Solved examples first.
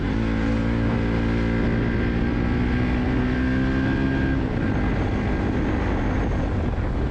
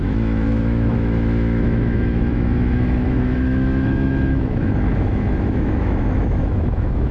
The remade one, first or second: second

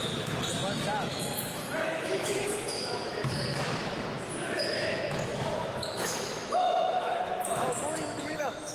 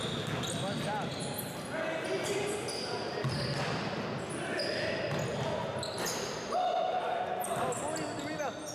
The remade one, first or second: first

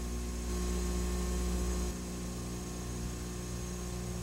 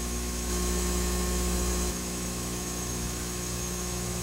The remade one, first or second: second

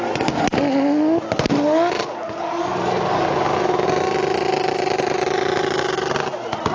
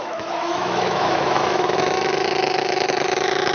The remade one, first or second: second